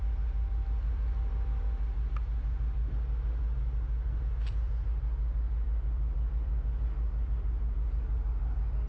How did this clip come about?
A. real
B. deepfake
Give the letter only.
A